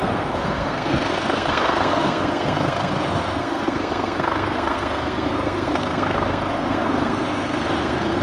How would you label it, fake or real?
fake